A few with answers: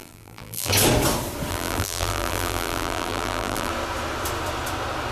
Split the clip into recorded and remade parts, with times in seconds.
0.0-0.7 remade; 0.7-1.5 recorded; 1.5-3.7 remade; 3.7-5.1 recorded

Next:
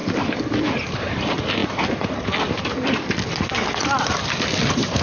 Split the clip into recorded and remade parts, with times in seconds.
0.0-0.8 recorded; 0.8-1.6 remade; 1.6-4.6 recorded; 4.6-5.0 remade

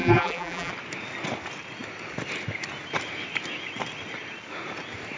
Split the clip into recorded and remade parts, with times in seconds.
0.0-0.7 remade; 0.7-5.2 recorded

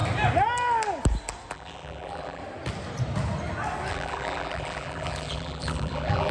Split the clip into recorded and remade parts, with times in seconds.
0.0-1.5 recorded; 1.5-2.4 remade; 2.4-3.9 recorded; 3.9-6.3 remade

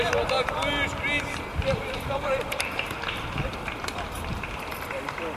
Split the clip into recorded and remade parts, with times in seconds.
0.0-1.5 recorded; 1.5-4.7 remade; 4.7-5.4 recorded

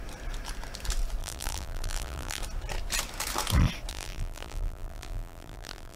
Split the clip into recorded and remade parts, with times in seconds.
0.0-1.2 recorded; 1.2-2.4 remade; 2.4-3.9 recorded; 3.9-6.0 remade

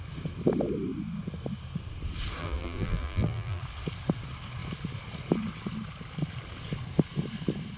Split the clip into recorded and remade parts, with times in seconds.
0.0-2.4 recorded; 2.4-3.6 remade; 3.6-7.8 recorded